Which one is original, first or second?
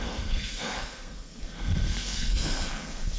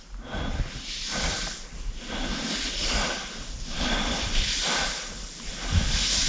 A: second